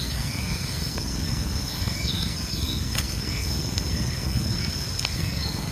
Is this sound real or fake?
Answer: fake